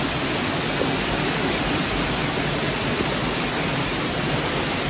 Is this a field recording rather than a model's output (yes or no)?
yes